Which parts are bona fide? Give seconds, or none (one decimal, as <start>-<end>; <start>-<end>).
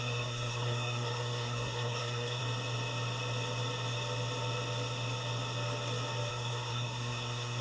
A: 2.4-6.3